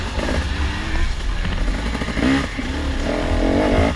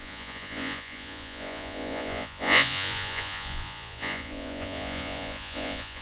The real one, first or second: first